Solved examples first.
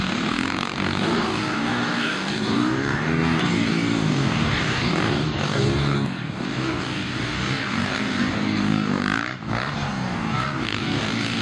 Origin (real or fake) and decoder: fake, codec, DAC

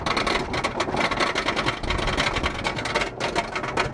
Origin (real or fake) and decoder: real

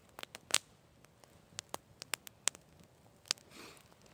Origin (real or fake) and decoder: real